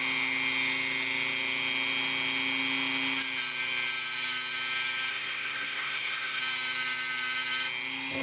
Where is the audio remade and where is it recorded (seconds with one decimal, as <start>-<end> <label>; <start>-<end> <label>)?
0.0-5.1 recorded; 5.1-6.4 remade; 6.4-8.2 recorded